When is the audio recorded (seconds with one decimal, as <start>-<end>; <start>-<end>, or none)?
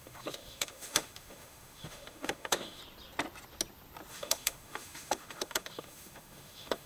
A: 2.8-4.1